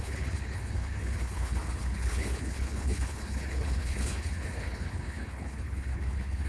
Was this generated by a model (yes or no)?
yes